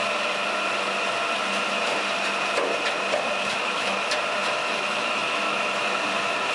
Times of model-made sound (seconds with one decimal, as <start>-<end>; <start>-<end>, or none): 3.6-4.1; 4.6-5.9